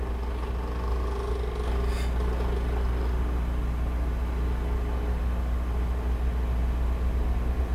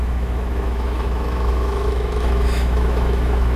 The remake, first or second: second